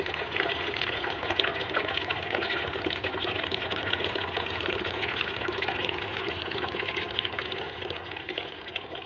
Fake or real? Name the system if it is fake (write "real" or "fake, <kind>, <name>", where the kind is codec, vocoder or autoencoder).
real